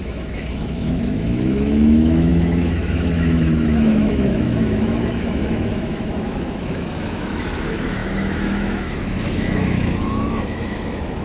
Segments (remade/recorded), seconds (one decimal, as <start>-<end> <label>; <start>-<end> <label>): 0.0-11.2 remade